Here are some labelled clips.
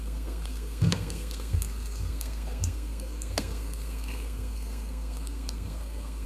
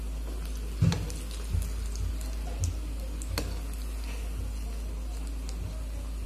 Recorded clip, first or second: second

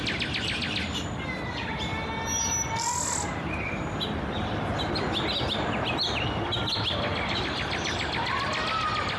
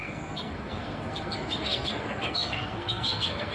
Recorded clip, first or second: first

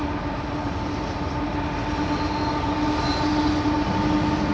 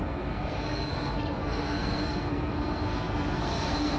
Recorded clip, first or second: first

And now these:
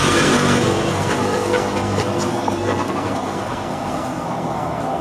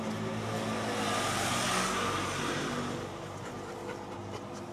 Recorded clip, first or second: second